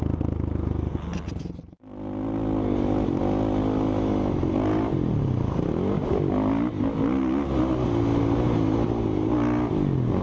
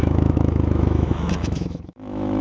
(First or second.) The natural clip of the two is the first